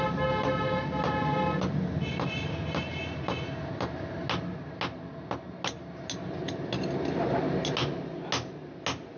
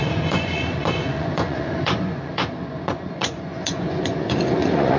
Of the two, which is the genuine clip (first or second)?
first